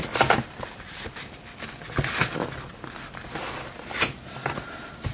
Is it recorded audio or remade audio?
recorded